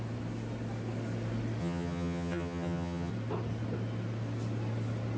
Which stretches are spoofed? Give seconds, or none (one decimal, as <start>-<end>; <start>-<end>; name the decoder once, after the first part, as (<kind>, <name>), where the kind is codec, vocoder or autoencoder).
1.6-3.1 (vocoder, HiFi-GAN)